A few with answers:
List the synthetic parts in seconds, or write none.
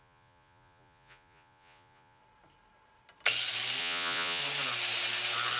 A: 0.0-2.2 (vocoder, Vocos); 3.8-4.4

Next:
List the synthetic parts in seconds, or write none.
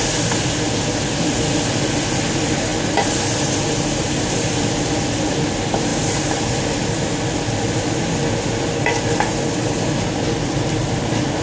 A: none